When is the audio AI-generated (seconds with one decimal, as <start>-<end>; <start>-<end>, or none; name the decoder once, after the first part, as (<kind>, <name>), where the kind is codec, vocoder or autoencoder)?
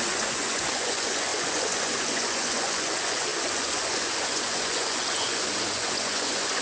0.0-6.6 (vocoder, Vocos)